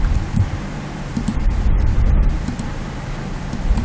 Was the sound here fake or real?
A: fake